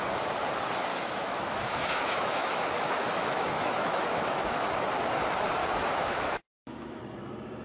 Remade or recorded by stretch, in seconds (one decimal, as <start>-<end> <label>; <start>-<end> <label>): 0.0-0.9 recorded; 0.9-4.7 remade; 4.7-5.6 recorded; 5.6-7.0 remade; 7.0-7.6 recorded